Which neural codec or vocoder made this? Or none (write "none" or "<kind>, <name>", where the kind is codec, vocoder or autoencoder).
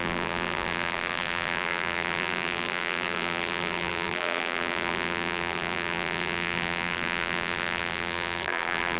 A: vocoder, BigVGAN v2